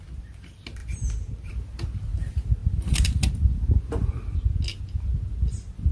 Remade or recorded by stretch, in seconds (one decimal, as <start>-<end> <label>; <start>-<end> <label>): 0.0-5.9 recorded